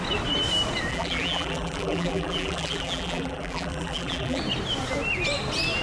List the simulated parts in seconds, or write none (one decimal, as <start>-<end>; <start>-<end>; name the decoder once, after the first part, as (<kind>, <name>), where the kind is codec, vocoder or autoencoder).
0.9-4.4 (vocoder, BigVGAN v2)